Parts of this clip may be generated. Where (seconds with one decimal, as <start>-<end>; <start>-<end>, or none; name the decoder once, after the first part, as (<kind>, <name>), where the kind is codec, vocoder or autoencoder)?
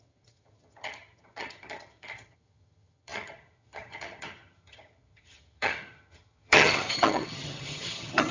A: 0.0-8.3 (vocoder, HiFi-GAN)